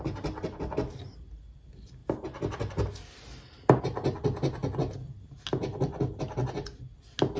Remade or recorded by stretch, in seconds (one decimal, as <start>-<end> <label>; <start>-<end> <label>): 0.0-7.4 recorded